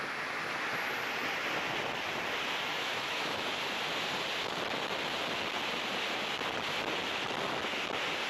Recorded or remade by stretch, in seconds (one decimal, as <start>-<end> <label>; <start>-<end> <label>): 0.0-2.7 recorded; 2.7-3.6 remade; 3.6-8.3 recorded